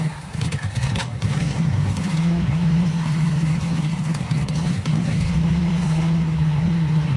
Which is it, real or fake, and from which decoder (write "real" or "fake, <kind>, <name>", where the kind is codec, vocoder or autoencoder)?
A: fake, codec, SNAC